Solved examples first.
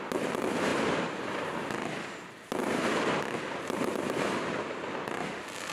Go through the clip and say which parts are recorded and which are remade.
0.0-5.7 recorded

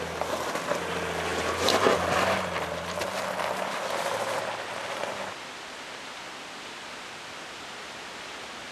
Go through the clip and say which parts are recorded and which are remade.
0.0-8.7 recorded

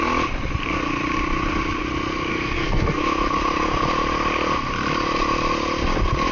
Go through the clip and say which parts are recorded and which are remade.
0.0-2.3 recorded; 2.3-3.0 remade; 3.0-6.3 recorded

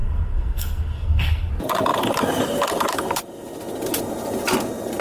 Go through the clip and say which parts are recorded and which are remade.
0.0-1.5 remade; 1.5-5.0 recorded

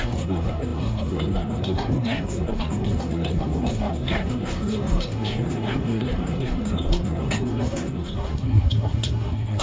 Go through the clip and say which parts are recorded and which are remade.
0.0-9.6 remade

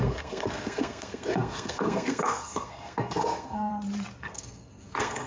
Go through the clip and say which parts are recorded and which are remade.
0.0-3.7 remade; 3.7-4.2 recorded; 4.2-5.3 remade

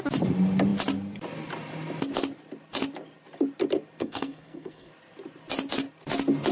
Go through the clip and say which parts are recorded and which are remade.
0.0-4.0 recorded; 4.0-4.9 remade; 4.9-6.5 recorded